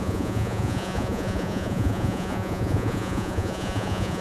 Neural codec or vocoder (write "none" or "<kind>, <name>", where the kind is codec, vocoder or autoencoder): vocoder, Vocos